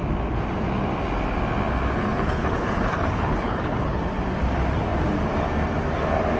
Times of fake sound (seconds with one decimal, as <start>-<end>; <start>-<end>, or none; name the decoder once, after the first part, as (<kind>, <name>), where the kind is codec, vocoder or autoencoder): 2.0-4.0 (codec, HILCodec)